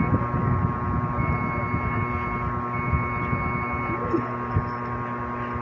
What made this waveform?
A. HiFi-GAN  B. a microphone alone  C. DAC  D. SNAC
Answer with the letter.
B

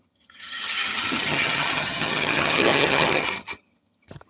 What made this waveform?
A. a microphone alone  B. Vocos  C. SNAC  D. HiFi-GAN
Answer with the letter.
D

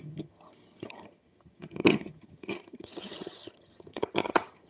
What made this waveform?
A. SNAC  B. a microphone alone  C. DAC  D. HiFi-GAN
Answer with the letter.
D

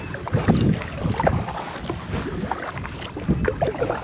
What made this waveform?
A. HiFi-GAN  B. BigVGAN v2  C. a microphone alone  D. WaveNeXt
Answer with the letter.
C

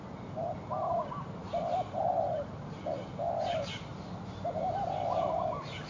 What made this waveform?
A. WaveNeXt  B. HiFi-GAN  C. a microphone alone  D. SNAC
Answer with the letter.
C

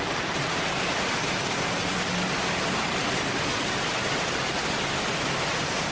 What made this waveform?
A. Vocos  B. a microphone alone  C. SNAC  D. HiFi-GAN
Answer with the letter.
B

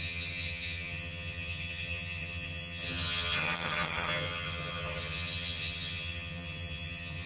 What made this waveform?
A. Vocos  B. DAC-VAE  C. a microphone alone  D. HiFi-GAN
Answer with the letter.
D